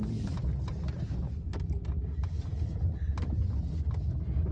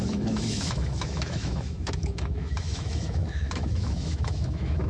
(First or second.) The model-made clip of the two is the second